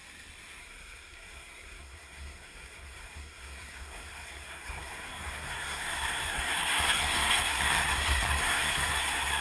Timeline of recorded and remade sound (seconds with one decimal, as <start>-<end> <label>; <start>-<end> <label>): 0.0-0.6 recorded; 0.6-9.4 remade